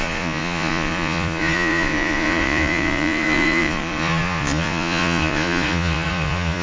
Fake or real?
fake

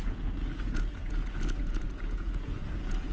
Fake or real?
fake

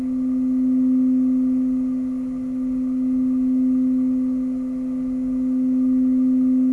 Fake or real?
real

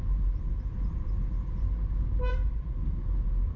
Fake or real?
real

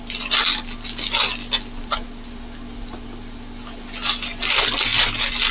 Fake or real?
real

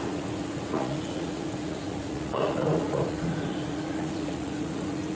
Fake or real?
fake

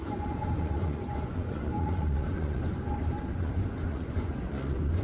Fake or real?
fake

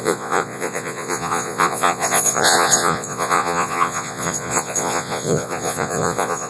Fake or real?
fake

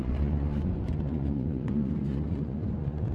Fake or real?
fake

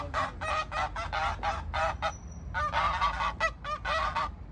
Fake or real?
real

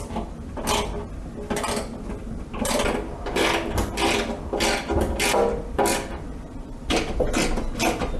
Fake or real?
real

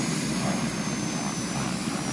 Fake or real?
real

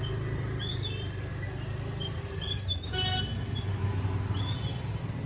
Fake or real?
real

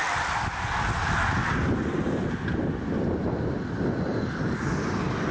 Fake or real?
real